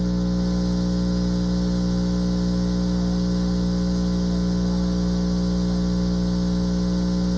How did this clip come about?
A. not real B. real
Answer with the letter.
B